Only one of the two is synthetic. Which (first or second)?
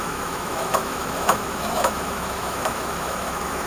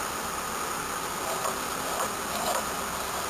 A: first